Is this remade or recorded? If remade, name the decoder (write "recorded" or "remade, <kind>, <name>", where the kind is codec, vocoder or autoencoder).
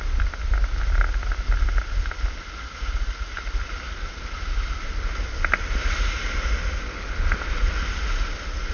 recorded